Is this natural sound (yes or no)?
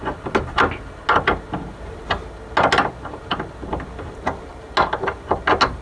yes